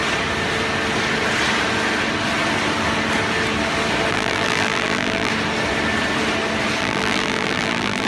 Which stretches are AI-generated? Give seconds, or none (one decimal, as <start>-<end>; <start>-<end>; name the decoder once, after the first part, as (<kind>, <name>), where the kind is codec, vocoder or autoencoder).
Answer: 4.1-5.3 (vocoder, BigVGAN v2); 6.8-8.1